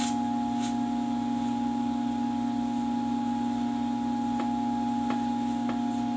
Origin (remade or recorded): recorded